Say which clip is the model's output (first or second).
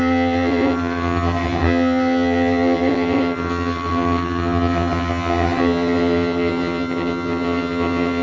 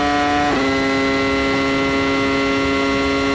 first